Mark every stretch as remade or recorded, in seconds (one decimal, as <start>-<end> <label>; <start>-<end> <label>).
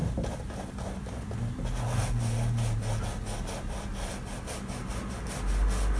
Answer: 0.0-6.0 recorded